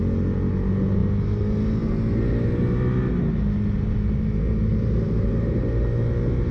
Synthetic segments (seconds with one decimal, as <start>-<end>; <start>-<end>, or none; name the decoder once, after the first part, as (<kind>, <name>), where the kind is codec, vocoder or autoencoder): 4.7-5.6 (vocoder, BigVGAN v2)